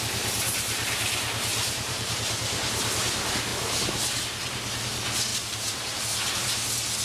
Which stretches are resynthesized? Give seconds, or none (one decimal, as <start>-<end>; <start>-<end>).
1.5-2.2; 5.3-6.0